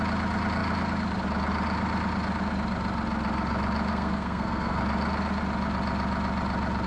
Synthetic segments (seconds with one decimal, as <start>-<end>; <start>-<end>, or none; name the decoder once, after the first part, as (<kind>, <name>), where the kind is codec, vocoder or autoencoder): 3.9-4.8 (codec, SNAC)